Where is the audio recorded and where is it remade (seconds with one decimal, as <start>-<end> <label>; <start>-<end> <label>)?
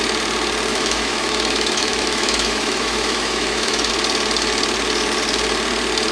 0.0-0.7 recorded; 0.7-3.9 remade; 3.9-6.1 recorded